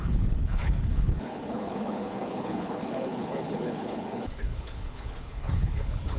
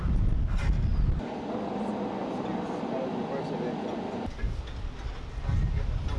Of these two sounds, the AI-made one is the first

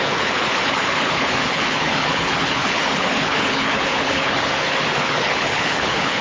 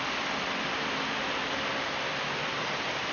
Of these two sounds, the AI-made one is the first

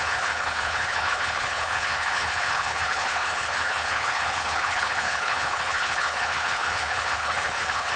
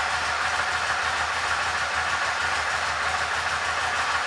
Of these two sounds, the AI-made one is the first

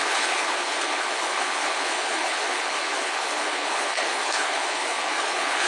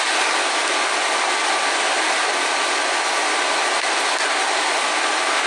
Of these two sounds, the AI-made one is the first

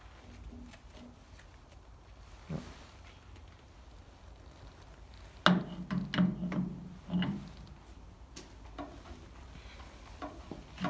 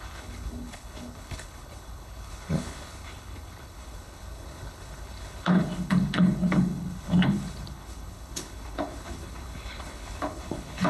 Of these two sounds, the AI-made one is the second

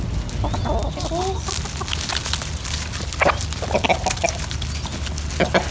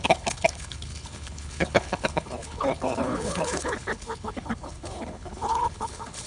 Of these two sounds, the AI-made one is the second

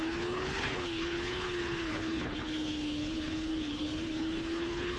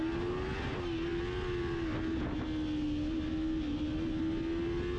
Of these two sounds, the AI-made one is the first